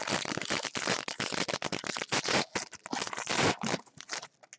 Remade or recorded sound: recorded